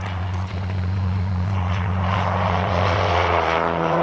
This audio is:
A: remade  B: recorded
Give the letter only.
A